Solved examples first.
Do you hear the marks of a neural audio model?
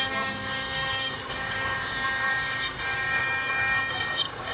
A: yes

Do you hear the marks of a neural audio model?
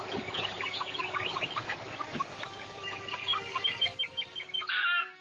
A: yes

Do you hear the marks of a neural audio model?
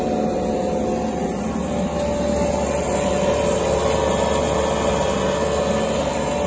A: no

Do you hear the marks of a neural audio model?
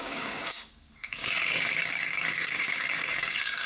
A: yes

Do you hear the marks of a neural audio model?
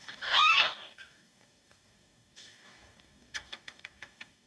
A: yes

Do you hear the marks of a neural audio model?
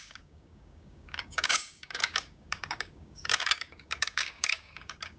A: yes